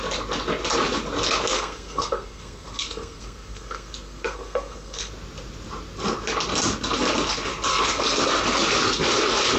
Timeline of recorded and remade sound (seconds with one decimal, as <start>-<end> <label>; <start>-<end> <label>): 0.0-1.5 recorded; 1.5-5.1 remade; 5.1-7.7 recorded; 7.7-8.3 remade; 8.3-9.6 recorded